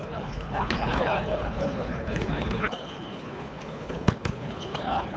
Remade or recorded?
remade